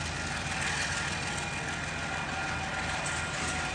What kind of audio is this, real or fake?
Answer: real